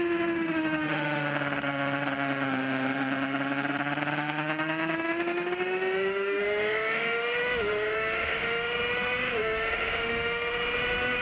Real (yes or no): no